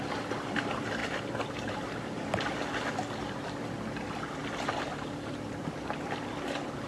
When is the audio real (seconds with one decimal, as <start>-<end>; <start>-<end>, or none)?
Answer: 0.0-6.9